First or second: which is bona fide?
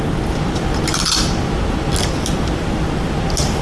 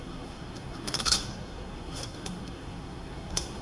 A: first